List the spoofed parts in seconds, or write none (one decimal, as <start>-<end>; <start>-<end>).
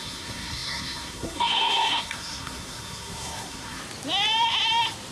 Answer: 0.0-3.8